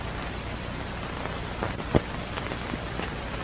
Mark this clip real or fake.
real